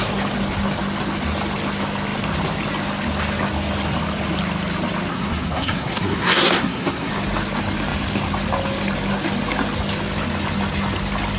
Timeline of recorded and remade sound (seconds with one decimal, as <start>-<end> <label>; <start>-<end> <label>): 0.0-5.1 recorded; 5.1-7.1 remade; 7.1-11.4 recorded